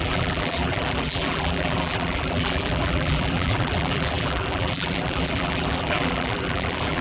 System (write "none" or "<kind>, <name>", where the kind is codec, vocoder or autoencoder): vocoder, BigVGAN v2